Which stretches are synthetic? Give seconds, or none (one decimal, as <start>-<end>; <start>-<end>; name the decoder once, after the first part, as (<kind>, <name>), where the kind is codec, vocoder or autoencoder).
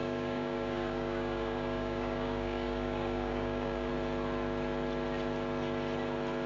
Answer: 0.0-3.9 (codec, DAC)